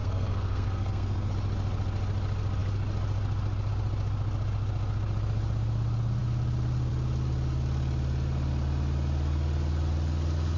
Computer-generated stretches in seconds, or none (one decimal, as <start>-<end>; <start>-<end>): 0.0-1.3